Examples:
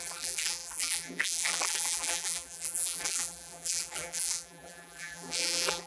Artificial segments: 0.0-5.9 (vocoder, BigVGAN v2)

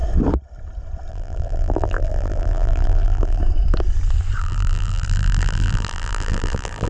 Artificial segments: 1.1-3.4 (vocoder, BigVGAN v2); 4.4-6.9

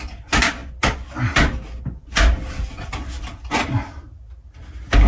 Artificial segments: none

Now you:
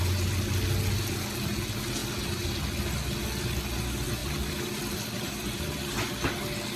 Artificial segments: 2.0-3.2 (vocoder, BigVGAN v2); 4.2-6.1

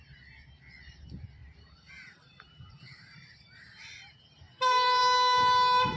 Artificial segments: 1.4-5.0 (vocoder, BigVGAN v2)